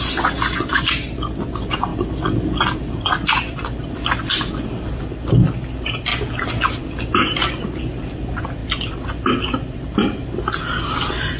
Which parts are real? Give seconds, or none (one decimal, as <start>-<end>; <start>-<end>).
0.0-11.4